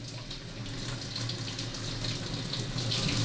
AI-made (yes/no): no